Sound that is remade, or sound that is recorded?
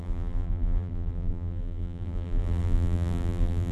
remade